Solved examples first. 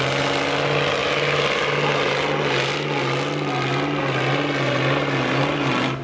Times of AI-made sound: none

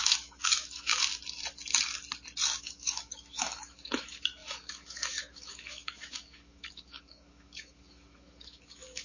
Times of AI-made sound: 0.0-0.9; 2.6-9.0

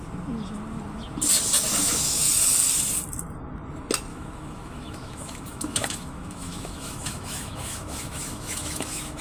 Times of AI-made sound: 1.8-2.3; 4.1-9.2